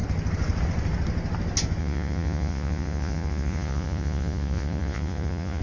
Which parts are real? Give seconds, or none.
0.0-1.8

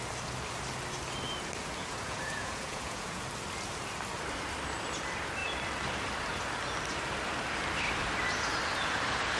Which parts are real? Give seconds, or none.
0.0-1.8; 3.2-9.4